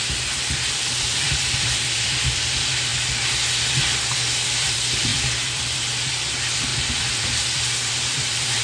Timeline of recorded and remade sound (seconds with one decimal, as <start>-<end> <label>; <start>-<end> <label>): 0.0-2.9 remade; 2.9-3.7 recorded; 3.7-8.6 remade